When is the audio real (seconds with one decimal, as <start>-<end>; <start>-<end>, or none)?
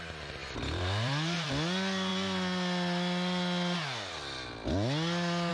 0.0-0.4; 1.5-5.5